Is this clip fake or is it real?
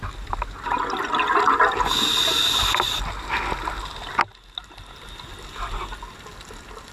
real